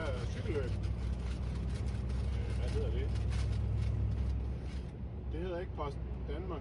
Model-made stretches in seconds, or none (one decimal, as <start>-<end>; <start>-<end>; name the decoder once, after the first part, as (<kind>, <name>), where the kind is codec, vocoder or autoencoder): 0.0-0.5 (autoencoder, DAC-VAE)